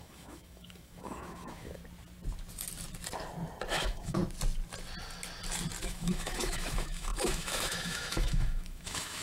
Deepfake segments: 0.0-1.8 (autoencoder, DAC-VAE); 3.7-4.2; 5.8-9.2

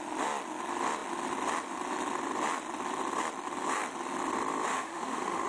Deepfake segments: 4.7-5.5 (autoencoder, DAC-VAE)